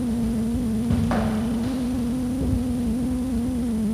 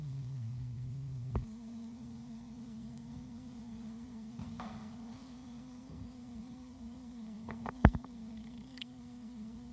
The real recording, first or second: first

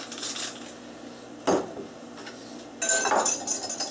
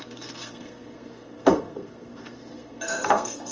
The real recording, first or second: first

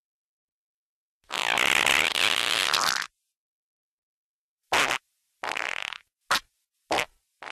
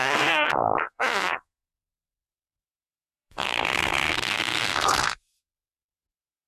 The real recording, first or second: first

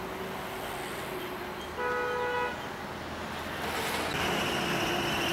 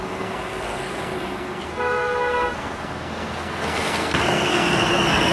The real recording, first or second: first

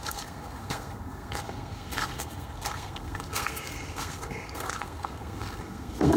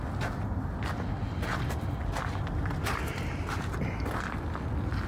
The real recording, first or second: second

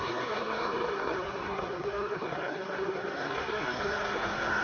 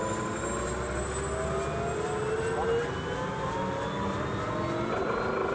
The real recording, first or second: second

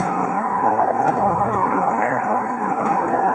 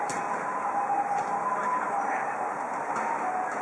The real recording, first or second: second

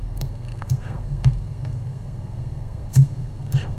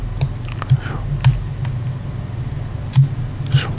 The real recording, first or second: second